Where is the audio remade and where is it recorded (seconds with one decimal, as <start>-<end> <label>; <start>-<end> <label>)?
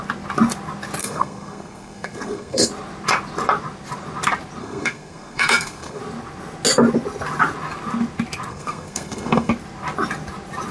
0.0-1.0 recorded; 1.0-2.7 remade; 2.7-4.6 recorded; 4.6-6.0 remade; 6.0-8.5 recorded; 8.5-9.5 remade; 9.5-10.7 recorded